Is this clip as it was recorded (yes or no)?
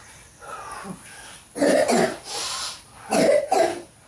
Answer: yes